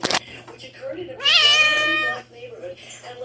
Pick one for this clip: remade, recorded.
recorded